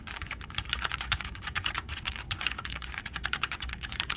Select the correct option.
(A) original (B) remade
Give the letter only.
B